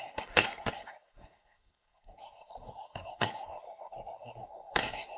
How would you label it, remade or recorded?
remade